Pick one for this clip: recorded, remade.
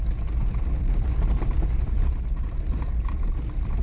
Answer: recorded